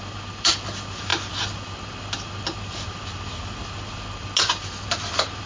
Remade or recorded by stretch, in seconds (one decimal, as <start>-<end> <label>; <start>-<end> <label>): 0.0-5.5 recorded